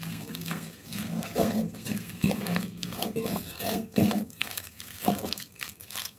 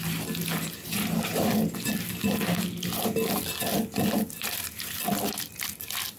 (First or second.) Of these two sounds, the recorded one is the second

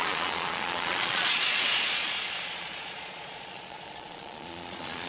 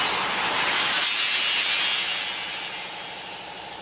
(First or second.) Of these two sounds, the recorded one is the second